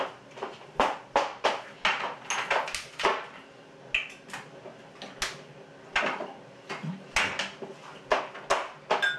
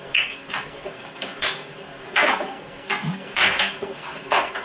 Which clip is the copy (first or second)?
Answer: second